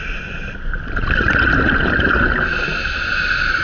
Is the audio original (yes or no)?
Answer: yes